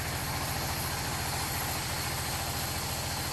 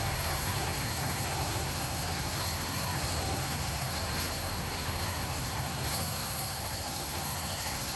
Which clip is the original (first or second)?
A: first